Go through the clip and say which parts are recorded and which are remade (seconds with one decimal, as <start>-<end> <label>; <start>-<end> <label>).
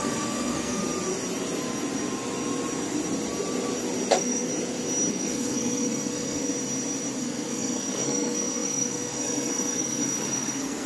0.0-0.8 remade; 0.8-4.1 recorded; 4.1-4.5 remade; 4.5-5.1 recorded; 5.1-6.5 remade; 6.5-7.2 recorded; 7.2-10.9 remade